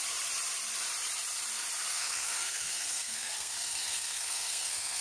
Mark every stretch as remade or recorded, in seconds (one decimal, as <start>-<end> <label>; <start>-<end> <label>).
0.0-1.9 recorded; 1.9-5.0 remade